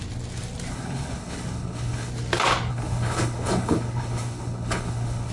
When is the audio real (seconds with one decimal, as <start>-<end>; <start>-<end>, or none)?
0.0-0.7; 2.1-2.7